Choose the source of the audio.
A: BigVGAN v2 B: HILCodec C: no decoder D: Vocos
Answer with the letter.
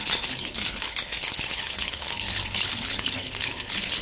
B